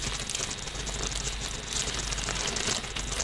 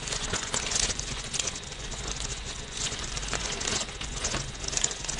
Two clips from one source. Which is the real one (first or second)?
first